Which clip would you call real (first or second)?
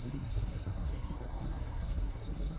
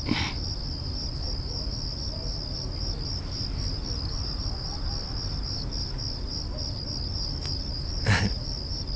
second